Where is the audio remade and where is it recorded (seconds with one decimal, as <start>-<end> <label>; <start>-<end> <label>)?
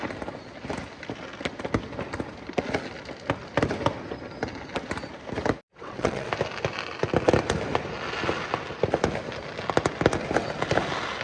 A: 0.0-5.7 recorded; 5.7-6.3 remade; 6.3-11.2 recorded